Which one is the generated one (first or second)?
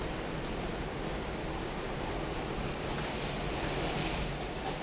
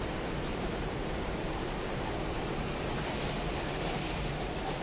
second